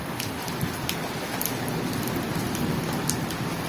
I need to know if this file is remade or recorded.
recorded